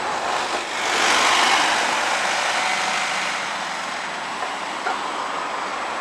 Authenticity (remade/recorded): recorded